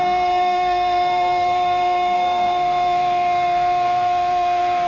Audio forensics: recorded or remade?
remade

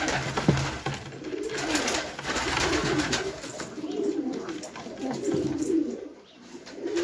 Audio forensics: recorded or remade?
recorded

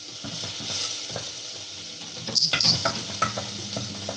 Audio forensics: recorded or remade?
recorded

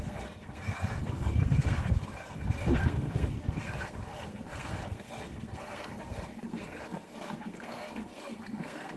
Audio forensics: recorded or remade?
remade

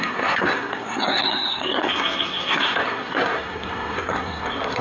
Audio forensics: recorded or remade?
remade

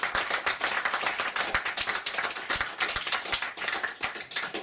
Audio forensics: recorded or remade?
recorded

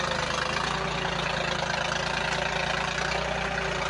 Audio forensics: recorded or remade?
recorded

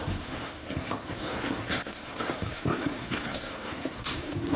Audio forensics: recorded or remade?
remade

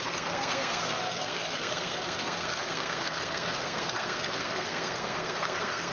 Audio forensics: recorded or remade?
remade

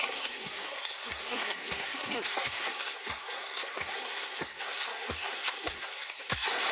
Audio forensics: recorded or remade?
remade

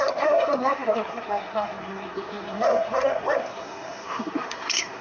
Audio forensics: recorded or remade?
remade